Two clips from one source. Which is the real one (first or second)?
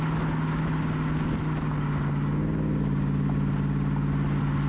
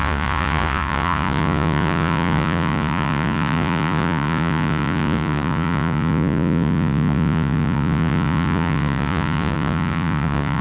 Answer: first